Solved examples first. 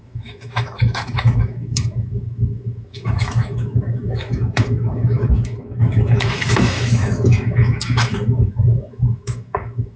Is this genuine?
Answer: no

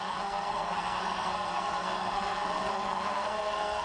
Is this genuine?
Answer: no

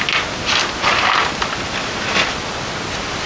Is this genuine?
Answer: yes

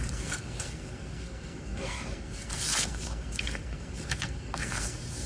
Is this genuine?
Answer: no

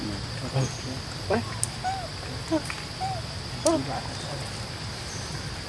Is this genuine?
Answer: yes